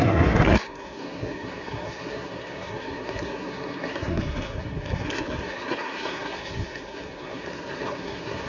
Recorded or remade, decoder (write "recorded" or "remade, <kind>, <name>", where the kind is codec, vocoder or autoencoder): remade, codec, SNAC